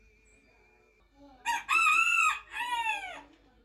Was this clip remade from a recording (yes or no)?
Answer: no